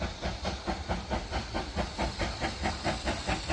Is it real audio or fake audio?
real